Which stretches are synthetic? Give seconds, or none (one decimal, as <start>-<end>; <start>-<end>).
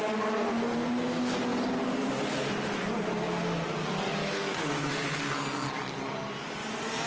4.2-4.9